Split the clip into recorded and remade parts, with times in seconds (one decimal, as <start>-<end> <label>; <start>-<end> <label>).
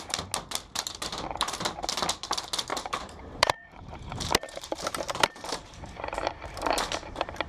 0.0-1.1 recorded; 1.1-1.6 remade; 1.6-2.7 recorded; 2.7-7.5 remade